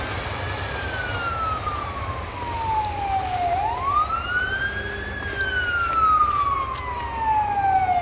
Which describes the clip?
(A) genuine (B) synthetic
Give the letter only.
A